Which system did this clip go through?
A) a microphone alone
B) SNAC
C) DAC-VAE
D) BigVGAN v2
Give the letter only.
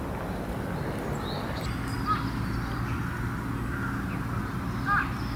A